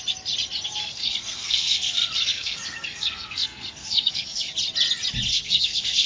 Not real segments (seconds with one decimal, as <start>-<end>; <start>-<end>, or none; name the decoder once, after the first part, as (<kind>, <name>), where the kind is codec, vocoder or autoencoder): 0.8-4.5 (codec, SNAC); 5.3-6.1